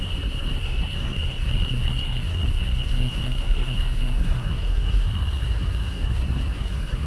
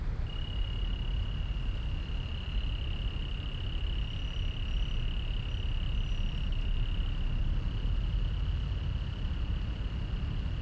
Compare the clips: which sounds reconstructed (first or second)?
first